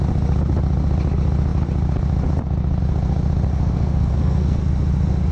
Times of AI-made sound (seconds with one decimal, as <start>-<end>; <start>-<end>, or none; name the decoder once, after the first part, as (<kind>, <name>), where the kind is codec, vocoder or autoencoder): 3.5-4.6 (codec, SNAC)